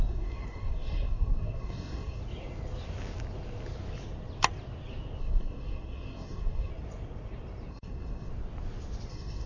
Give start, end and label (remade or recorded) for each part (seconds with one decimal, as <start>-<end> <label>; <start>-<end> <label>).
0.0-2.2 remade; 2.2-5.2 recorded; 5.2-6.7 remade; 6.7-7.7 recorded; 7.7-8.3 remade; 8.3-9.1 recorded; 9.1-9.5 remade